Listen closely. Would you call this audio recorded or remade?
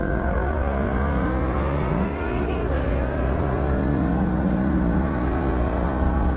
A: remade